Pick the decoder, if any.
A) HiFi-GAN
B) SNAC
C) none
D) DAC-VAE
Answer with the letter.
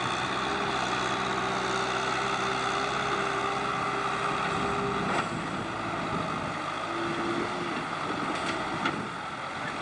C